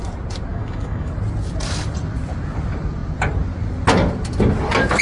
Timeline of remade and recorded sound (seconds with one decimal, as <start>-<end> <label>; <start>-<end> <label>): 0.0-0.5 recorded; 0.5-1.1 remade; 1.1-5.0 recorded